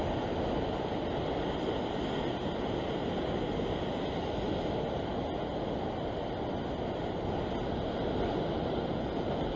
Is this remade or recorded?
recorded